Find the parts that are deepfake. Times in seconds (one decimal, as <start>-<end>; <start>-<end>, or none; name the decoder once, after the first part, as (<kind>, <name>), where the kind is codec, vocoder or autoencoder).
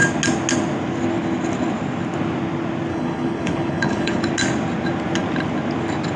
2.9-4.2 (codec, HILCodec)